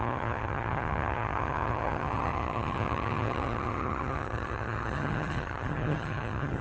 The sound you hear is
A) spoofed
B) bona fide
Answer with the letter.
A